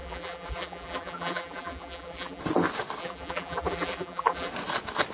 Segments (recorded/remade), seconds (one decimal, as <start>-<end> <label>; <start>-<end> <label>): 0.0-2.4 remade; 2.4-3.0 recorded; 3.0-4.5 remade; 4.5-5.1 recorded